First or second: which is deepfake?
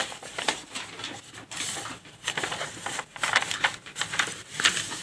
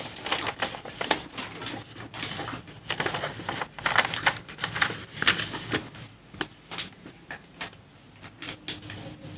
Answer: first